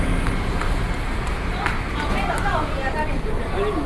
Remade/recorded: recorded